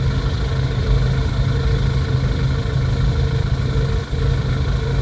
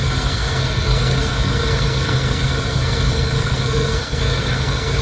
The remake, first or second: second